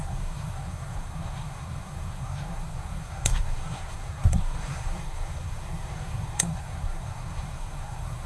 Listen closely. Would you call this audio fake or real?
fake